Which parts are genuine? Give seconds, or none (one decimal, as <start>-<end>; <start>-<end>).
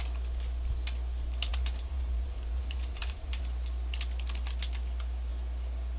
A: 0.0-1.5; 3.4-6.0